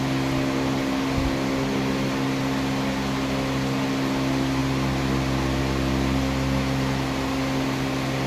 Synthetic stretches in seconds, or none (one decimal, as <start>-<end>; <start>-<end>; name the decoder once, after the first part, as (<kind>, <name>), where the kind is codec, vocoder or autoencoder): none